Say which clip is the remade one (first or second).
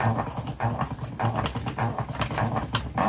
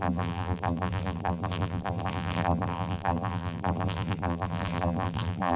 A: second